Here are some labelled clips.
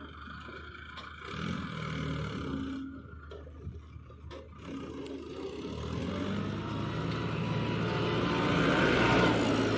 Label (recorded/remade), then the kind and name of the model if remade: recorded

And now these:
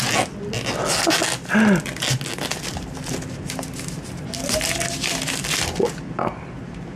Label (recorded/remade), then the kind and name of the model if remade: recorded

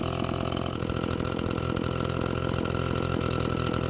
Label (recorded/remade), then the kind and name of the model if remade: recorded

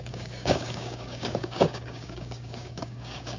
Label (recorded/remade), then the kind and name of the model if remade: remade, codec, DAC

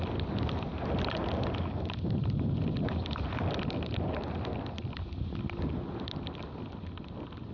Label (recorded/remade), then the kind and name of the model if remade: recorded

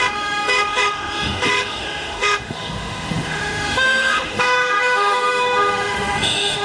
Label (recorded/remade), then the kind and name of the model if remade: remade, autoencoder, DAC-VAE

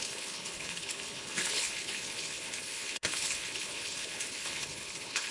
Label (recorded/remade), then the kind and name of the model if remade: remade, codec, HILCodec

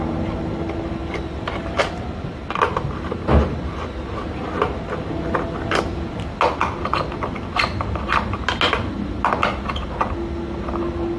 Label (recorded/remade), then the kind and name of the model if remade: recorded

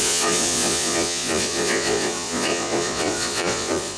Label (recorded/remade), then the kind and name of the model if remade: remade, vocoder, Vocos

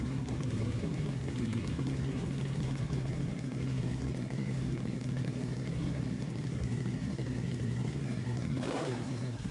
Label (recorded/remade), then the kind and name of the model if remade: remade, codec, SNAC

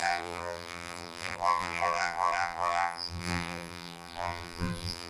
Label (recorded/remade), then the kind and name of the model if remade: remade, vocoder, BigVGAN v2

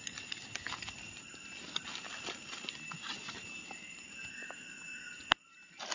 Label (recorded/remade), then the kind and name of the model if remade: recorded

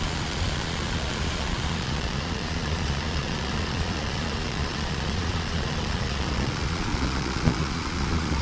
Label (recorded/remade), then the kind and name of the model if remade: remade, vocoder, Vocos